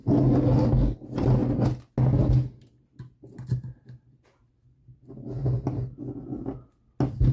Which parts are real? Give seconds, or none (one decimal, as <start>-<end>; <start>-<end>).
0.0-7.3